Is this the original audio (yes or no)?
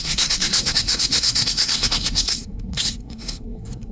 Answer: no